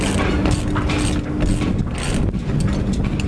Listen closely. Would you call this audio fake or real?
real